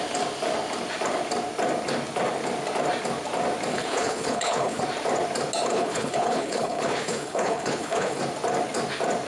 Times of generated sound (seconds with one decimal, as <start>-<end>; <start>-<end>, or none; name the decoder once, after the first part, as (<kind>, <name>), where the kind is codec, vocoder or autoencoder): 3.7-4.8 (codec, HILCodec); 5.7-8.2